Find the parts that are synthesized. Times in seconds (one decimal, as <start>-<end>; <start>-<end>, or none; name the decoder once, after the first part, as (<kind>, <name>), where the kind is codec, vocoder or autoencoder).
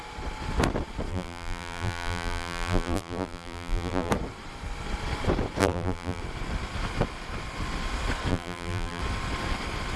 1.1-4.1 (vocoder, BigVGAN v2); 5.6-6.2; 8.3-9.0